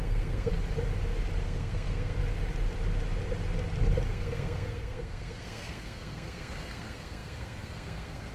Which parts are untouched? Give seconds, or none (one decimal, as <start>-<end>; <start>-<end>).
0.5-1.4; 2.2-4.1